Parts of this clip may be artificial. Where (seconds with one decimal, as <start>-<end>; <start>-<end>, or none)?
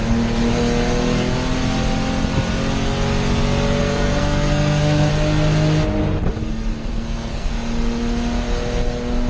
3.8-5.1; 6.7-7.5